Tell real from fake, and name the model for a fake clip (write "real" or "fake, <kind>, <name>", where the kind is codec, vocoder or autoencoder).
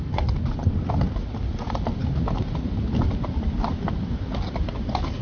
real